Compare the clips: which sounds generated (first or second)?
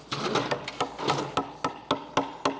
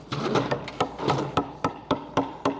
second